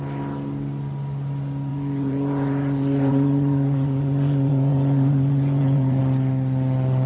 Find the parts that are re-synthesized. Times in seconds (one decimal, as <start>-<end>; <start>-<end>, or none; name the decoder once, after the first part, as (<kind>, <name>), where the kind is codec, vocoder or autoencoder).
1.7-6.0 (vocoder, Vocos)